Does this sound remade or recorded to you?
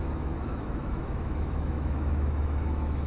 remade